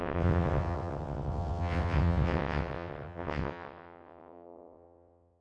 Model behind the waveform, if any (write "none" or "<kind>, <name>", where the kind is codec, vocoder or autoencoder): vocoder, WaveNeXt